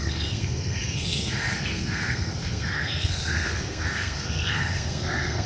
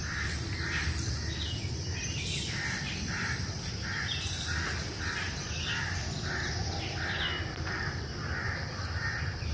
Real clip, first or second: second